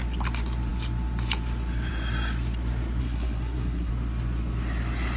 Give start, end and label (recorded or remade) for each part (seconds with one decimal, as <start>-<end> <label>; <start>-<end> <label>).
0.0-3.0 recorded; 3.0-3.9 remade; 3.9-5.2 recorded